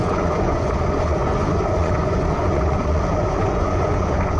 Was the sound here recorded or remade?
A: remade